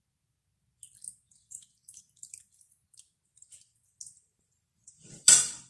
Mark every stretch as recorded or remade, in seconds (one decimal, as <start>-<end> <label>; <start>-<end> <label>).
0.0-1.4 recorded; 1.4-2.0 remade; 2.0-4.3 recorded; 4.3-5.7 remade